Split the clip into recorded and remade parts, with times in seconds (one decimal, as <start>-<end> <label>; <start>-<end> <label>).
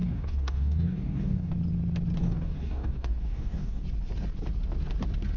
0.0-1.5 remade; 1.5-2.2 recorded; 2.2-3.8 remade; 3.8-5.4 recorded